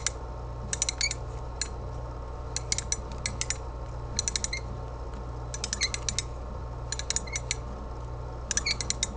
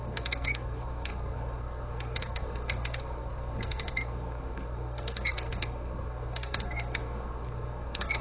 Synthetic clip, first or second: second